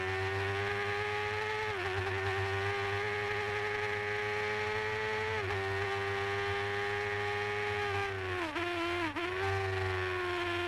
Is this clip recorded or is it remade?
recorded